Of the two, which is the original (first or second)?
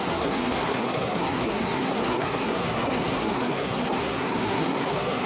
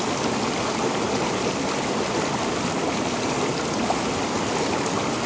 second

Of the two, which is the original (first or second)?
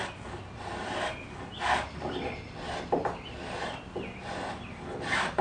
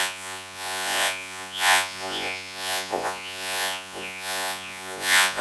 first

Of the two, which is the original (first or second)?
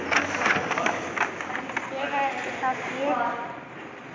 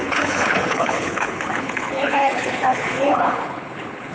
first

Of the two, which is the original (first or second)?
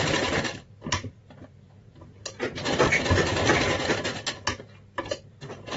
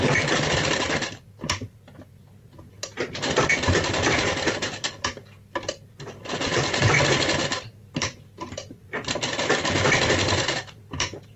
first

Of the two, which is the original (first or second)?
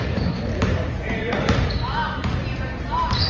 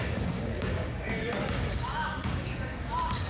first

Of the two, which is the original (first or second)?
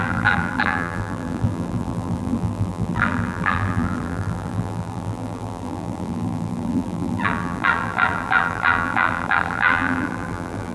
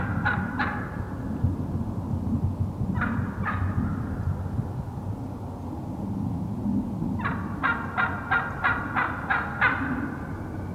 second